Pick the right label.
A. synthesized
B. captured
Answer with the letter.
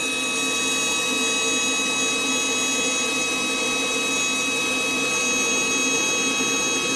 B